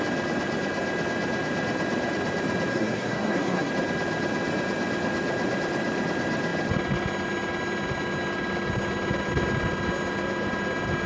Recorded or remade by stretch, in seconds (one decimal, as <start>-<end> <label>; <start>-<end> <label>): 0.0-2.7 recorded; 2.7-3.7 remade; 3.7-11.1 recorded